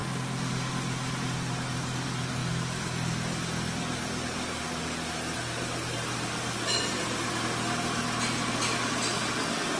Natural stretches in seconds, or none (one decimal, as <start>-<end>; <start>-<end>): 0.0-9.8